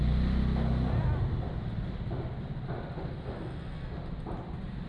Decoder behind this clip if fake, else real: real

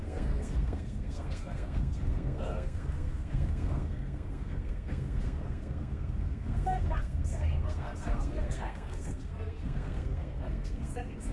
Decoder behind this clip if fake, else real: fake, codec, SNAC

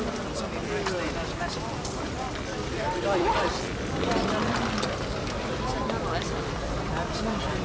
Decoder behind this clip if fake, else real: real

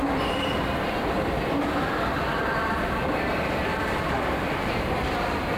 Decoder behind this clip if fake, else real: fake, vocoder, BigVGAN v2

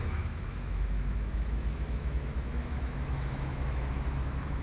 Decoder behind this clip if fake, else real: fake, autoencoder, DAC-VAE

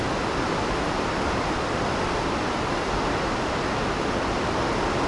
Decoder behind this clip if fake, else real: real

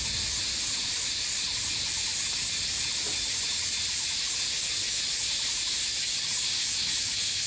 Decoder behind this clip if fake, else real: real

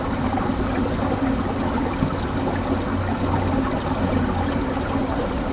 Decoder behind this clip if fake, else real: real